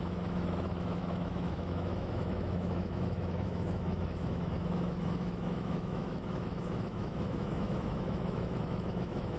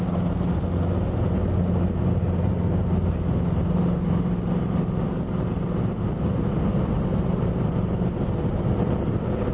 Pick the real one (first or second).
second